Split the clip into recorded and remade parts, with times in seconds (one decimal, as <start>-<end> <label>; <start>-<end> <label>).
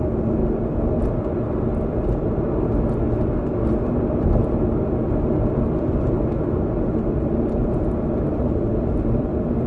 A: 0.0-1.7 remade; 1.7-5.6 recorded; 5.6-9.7 remade